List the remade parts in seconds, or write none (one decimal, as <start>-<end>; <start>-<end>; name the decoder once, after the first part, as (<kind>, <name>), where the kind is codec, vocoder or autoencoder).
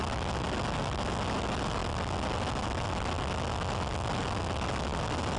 none